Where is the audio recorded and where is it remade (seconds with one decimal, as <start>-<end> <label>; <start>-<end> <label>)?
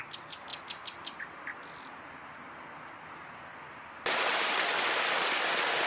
0.0-5.9 recorded